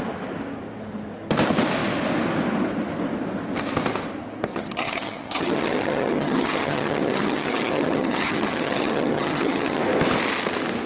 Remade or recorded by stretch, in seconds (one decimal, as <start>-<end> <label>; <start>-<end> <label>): 0.0-4.5 recorded; 4.5-9.8 remade; 9.8-10.9 recorded